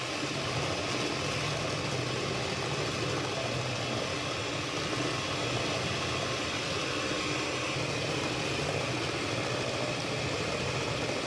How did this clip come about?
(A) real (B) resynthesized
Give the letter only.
A